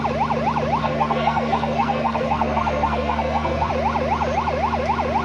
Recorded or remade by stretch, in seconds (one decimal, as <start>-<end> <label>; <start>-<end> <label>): 0.0-0.8 recorded; 0.8-3.7 remade; 3.7-5.2 recorded